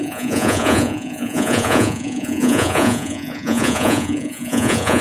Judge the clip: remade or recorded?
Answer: remade